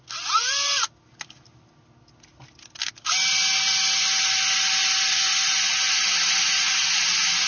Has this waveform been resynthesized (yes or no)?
no